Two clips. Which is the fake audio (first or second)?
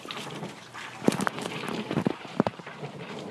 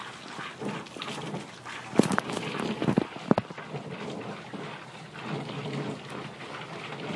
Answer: first